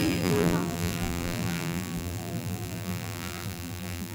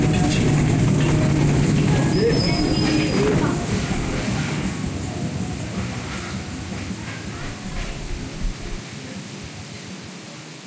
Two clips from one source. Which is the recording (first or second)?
second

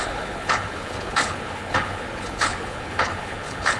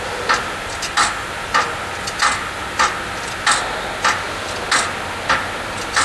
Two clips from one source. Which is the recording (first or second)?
second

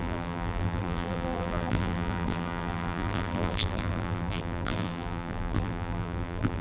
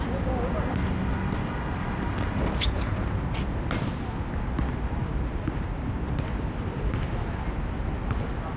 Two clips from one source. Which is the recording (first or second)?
second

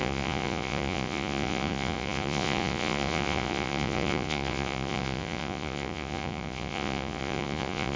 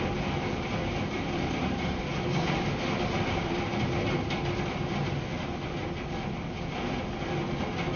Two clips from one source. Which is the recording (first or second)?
second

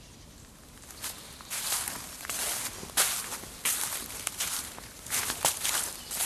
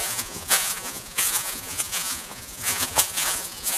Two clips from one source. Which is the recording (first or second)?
first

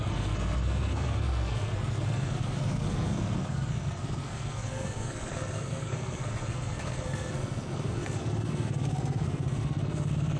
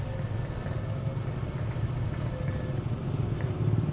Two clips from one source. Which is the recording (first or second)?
second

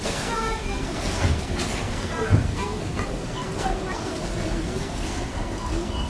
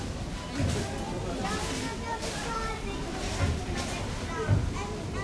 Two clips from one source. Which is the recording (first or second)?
second